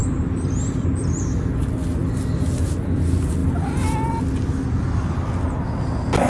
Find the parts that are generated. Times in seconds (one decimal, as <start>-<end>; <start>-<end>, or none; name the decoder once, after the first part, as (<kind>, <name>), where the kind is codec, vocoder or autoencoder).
none